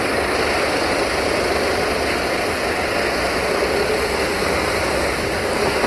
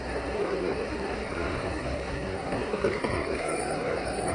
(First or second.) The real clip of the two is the first